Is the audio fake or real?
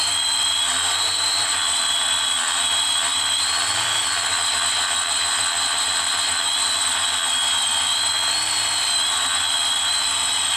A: fake